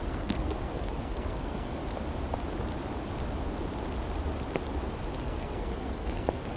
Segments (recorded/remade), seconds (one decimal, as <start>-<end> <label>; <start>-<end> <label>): 0.0-1.8 remade; 1.8-5.2 recorded; 5.2-6.6 remade